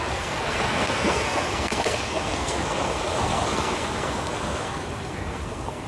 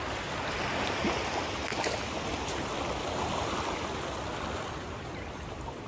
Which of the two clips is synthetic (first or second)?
first